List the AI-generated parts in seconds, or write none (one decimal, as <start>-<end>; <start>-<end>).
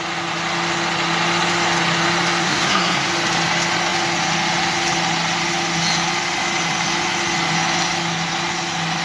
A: 2.4-3.1